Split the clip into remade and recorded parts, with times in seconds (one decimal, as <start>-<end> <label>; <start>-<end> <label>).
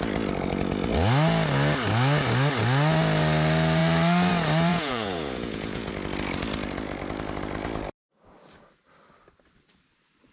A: 0.0-4.7 recorded; 4.7-5.9 remade; 5.9-10.3 recorded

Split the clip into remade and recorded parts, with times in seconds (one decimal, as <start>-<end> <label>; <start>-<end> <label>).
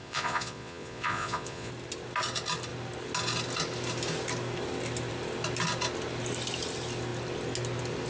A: 0.0-1.7 remade; 1.7-8.1 recorded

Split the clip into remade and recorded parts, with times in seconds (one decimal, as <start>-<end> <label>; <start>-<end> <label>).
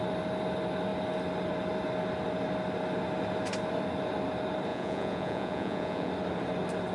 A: 0.0-4.7 recorded; 4.7-6.1 remade; 6.1-6.9 recorded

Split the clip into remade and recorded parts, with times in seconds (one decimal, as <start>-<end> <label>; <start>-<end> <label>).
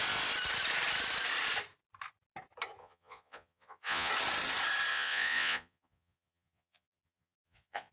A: 0.0-2.8 recorded; 2.8-4.1 remade; 4.1-4.9 recorded; 4.9-7.9 remade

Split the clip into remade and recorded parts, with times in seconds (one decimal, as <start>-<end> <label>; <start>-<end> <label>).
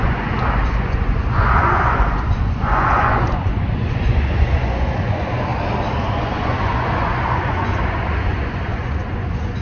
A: 0.0-5.5 remade; 5.5-6.0 recorded; 6.0-9.6 remade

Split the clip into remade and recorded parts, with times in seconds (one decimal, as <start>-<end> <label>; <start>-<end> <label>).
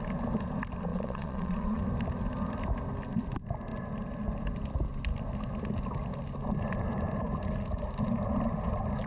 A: 0.0-0.9 recorded; 0.9-1.8 remade; 1.8-9.1 recorded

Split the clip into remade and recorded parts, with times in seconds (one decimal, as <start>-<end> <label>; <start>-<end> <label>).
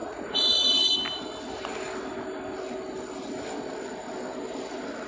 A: 0.0-0.9 remade; 0.9-5.1 recorded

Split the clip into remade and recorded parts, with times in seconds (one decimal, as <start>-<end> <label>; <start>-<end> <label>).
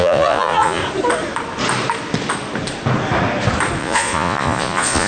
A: 0.0-0.8 remade; 0.8-3.8 recorded; 3.8-5.1 remade